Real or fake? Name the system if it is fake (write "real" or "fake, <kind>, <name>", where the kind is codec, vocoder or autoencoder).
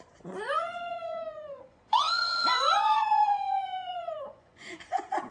fake, vocoder, Vocos